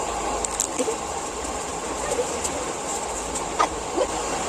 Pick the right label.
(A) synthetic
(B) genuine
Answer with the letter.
B